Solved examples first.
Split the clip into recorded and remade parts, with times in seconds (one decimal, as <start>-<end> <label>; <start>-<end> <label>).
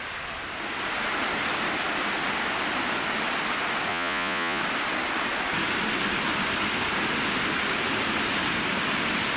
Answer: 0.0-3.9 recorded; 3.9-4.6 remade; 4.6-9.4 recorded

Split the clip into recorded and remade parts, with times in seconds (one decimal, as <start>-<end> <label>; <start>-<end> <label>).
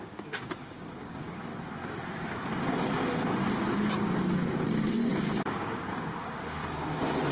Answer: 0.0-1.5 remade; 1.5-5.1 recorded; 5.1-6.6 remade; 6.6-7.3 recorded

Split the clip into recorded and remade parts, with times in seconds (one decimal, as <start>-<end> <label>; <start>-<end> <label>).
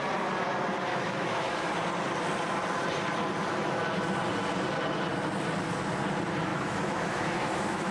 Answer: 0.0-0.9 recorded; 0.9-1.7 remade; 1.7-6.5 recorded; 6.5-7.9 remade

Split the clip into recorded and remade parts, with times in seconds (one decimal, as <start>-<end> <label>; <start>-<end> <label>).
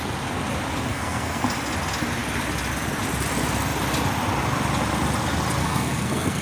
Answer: 0.0-0.9 recorded; 0.9-1.4 remade; 1.4-5.6 recorded; 5.6-6.4 remade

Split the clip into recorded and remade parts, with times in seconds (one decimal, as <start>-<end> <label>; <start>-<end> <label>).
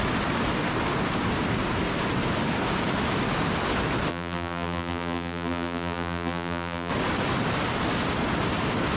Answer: 0.0-4.1 recorded; 4.1-6.9 remade; 6.9-9.0 recorded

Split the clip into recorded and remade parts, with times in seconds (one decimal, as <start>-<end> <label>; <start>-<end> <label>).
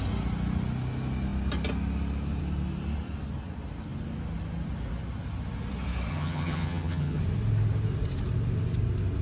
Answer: 0.0-6.1 recorded; 6.1-7.2 remade; 7.2-9.2 recorded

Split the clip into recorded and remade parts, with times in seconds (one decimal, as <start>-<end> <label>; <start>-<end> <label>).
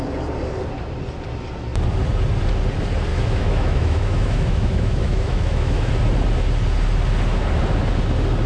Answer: 0.0-3.1 recorded; 3.1-5.9 remade; 5.9-8.5 recorded